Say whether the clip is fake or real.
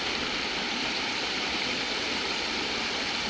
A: real